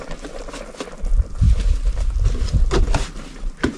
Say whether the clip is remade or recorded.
recorded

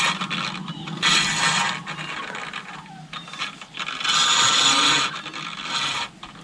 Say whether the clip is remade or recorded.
recorded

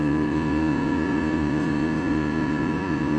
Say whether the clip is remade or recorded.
remade